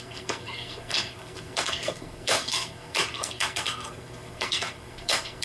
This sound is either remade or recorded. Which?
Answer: remade